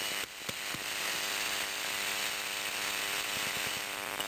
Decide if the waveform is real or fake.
real